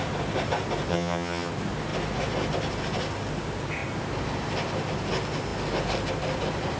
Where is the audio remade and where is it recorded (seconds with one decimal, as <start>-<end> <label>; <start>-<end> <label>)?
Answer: 0.0-0.9 recorded; 0.9-1.5 remade; 1.5-6.8 recorded